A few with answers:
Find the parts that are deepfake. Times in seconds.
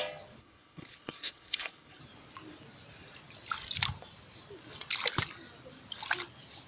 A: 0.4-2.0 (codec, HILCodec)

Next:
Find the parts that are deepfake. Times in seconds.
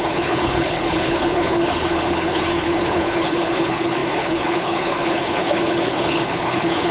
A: 0.0-6.9 (codec, HILCodec)